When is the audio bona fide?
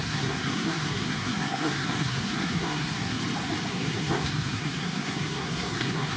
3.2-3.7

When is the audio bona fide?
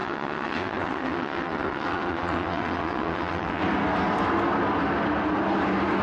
3.6-6.0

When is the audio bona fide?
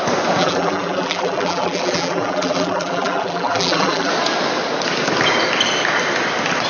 0.0-0.4; 4.1-6.7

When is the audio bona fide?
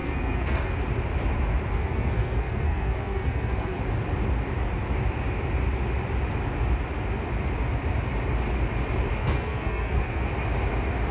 0.8-1.7; 3.8-9.2; 10.3-11.1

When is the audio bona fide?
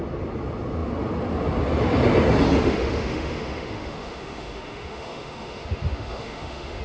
0.0-2.6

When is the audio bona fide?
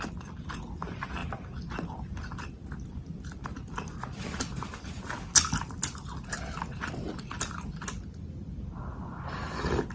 0.0-9.9